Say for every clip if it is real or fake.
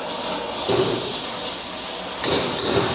real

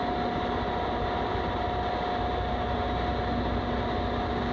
real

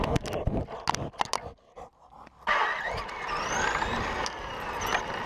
real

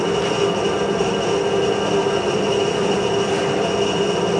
real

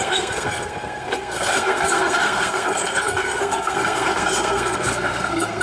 fake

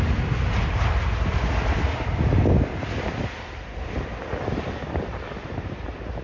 real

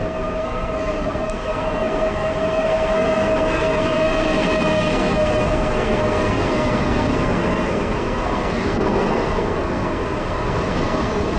fake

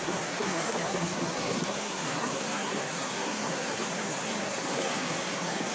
fake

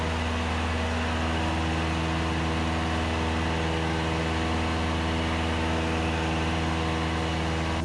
real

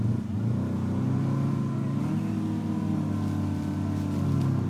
real